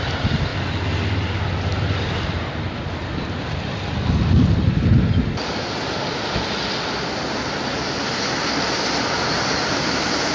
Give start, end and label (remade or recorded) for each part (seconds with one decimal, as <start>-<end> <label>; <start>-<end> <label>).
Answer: 0.0-10.3 recorded